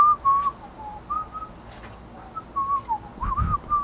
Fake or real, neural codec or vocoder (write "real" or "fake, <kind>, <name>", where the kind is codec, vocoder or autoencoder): real